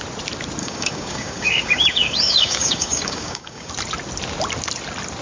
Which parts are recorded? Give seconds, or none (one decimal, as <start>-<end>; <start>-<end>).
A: 0.0-0.6; 3.7-5.2